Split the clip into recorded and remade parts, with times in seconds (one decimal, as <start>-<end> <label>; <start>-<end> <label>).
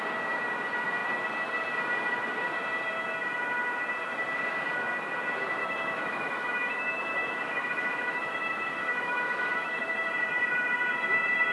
0.0-5.6 recorded; 5.6-10.1 remade; 10.1-11.5 recorded